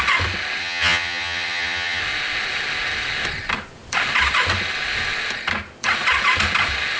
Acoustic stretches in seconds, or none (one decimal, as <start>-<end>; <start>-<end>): 0.0-0.6; 2.0-7.0